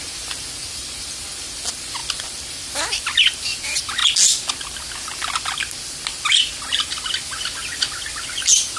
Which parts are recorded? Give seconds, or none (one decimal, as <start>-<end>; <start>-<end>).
0.0-8.8